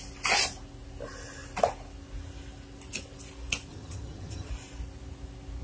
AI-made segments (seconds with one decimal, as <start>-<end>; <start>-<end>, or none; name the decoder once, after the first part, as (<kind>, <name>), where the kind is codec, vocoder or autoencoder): 3.7-4.5 (vocoder, HiFi-GAN)